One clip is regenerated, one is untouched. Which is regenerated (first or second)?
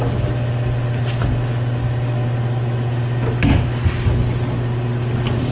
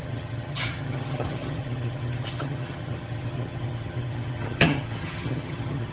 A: second